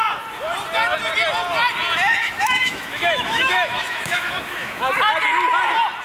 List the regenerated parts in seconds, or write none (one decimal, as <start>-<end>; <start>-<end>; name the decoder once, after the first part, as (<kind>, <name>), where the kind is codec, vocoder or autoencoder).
2.2-4.9 (autoencoder, DAC-VAE)